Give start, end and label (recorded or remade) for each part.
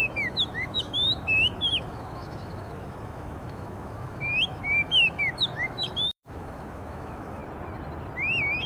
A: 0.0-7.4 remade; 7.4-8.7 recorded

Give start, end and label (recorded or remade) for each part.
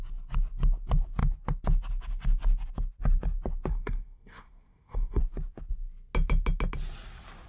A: 0.0-3.7 recorded; 3.7-5.2 remade; 5.2-7.5 recorded